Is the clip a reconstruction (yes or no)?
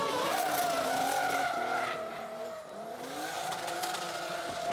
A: no